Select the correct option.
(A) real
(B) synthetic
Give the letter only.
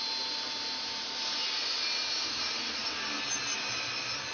A